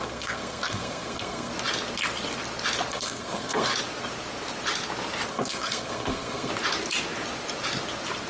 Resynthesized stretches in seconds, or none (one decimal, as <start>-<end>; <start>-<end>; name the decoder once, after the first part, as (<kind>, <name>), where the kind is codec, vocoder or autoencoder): 0.0-1.5 (codec, SNAC); 2.9-3.7; 5.3-6.5